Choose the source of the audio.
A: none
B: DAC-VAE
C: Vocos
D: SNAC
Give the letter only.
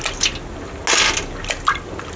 A